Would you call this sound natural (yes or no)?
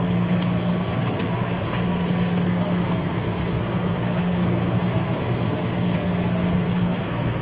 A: no